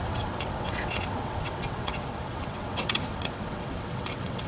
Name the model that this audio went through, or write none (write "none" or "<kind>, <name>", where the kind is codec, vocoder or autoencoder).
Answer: vocoder, WaveNeXt